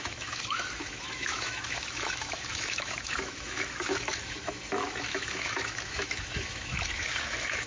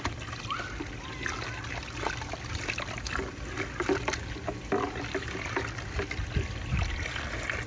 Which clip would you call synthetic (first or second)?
first